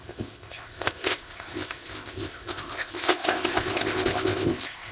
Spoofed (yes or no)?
yes